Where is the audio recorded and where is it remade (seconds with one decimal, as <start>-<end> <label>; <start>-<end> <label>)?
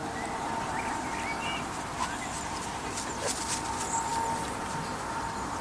0.0-5.6 recorded